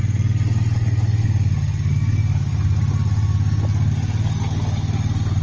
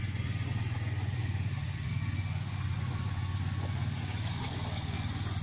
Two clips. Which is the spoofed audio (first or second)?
second